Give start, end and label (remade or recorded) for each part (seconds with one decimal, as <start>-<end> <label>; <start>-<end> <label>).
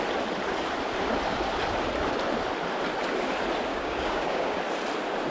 0.0-3.7 recorded; 3.7-4.6 remade; 4.6-5.3 recorded